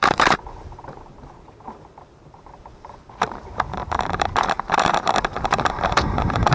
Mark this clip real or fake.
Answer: fake